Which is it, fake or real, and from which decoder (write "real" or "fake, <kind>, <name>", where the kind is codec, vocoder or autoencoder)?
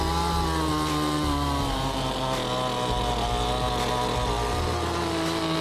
real